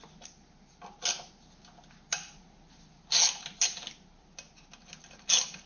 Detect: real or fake real